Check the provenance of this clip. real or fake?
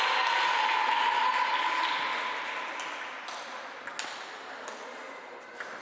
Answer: real